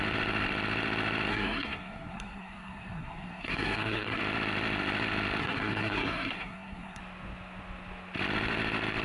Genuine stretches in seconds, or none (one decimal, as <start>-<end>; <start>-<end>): 0.0-1.3; 4.2-5.4; 7.0-9.0